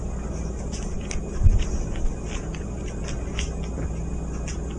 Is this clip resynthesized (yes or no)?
no